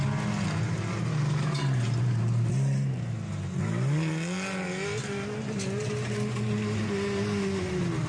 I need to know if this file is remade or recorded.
recorded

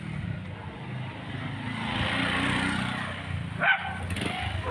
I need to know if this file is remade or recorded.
recorded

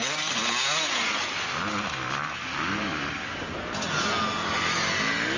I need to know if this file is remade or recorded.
recorded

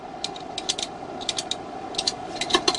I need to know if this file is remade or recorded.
recorded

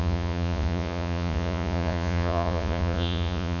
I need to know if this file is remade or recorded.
remade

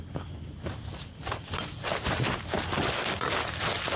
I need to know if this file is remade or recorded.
recorded